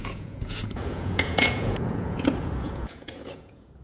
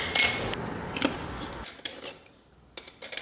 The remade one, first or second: first